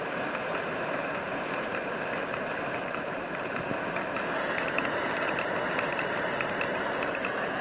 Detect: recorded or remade remade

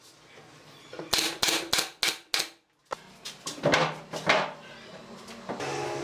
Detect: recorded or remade recorded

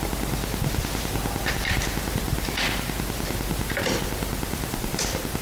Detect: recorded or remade recorded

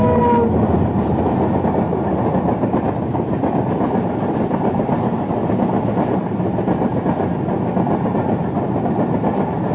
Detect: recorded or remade recorded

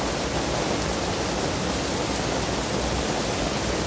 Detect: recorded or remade recorded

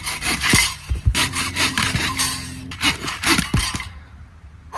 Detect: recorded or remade remade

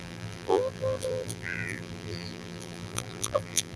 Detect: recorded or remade remade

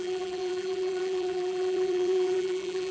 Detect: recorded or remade remade